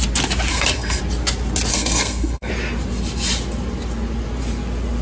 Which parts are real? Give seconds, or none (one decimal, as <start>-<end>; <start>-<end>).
0.0-0.5; 1.0-1.7; 2.5-5.0

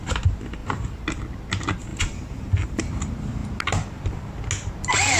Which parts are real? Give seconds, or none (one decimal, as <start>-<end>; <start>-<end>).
0.0-0.6; 1.2-1.9; 2.8-5.2

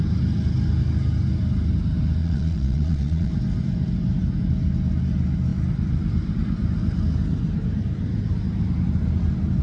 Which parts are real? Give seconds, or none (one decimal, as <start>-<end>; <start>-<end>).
0.0-2.2; 3.3-9.6

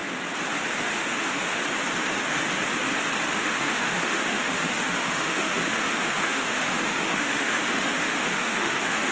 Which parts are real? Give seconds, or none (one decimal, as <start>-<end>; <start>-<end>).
0.0-0.7; 1.6-3.3

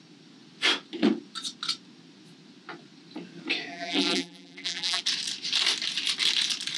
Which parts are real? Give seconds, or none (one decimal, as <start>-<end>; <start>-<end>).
0.0-3.7; 5.0-6.8

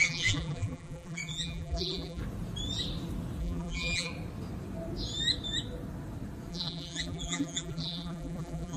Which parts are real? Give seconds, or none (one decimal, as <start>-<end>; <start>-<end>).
2.2-3.4; 4.1-6.5

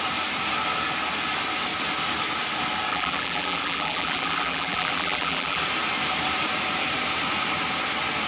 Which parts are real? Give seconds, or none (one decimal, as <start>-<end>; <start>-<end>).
0.0-2.9; 5.6-8.3